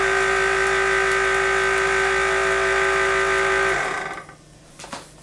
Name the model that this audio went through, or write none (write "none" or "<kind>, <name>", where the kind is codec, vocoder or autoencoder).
none